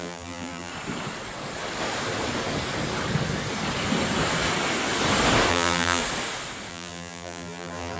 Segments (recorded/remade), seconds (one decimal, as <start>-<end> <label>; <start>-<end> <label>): 0.0-0.7 remade; 0.7-5.5 recorded; 5.5-6.0 remade; 6.0-6.7 recorded; 6.7-8.0 remade